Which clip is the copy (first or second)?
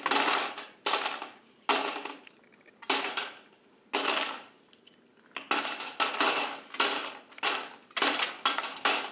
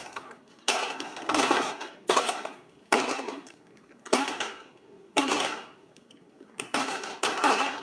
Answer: second